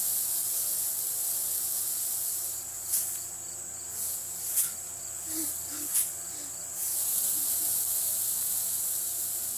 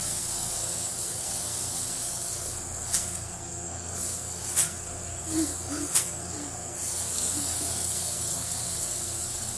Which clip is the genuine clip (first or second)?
first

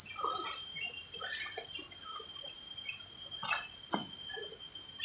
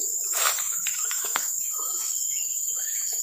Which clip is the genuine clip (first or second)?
first